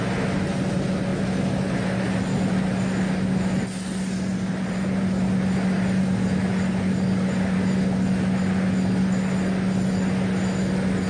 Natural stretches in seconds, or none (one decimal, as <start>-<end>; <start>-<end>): 0.0-4.3; 5.0-11.1